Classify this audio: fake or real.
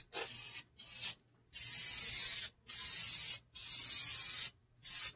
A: real